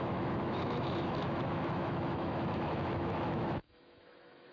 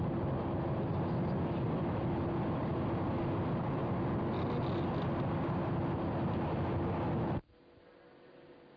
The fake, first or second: first